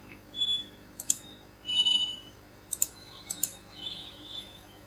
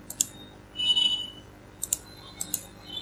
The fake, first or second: first